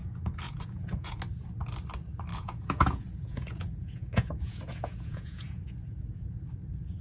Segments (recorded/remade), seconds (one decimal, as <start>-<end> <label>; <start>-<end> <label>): 0.0-1.2 remade; 1.2-2.3 recorded; 2.3-6.5 remade; 6.5-7.0 recorded